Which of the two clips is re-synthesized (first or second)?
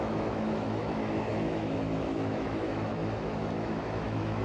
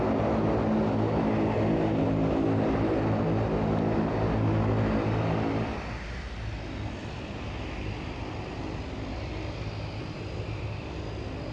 first